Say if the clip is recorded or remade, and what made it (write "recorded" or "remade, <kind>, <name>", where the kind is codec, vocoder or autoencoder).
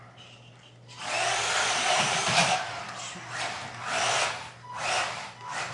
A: recorded